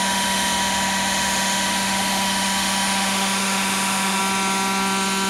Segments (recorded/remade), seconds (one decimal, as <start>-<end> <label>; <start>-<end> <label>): 0.0-4.2 remade; 4.2-5.3 recorded